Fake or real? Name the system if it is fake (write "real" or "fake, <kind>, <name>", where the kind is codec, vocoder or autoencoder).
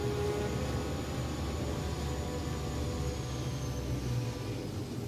real